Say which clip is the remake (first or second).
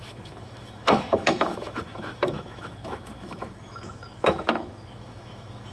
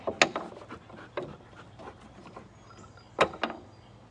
first